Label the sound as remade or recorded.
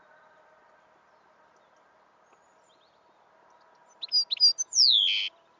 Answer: recorded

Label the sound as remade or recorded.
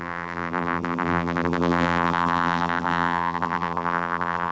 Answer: remade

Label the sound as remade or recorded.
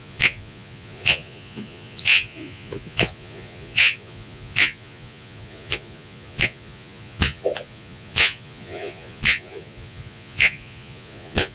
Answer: remade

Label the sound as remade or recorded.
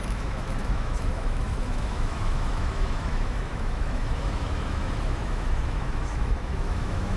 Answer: remade